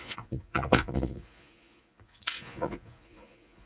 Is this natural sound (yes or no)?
no